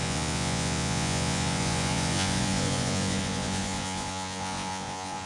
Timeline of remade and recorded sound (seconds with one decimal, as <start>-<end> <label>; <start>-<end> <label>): 0.0-5.3 remade